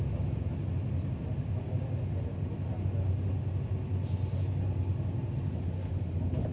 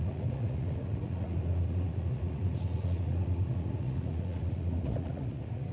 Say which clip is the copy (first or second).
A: second